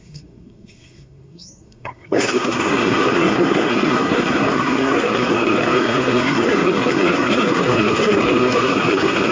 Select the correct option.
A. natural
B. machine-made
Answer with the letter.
B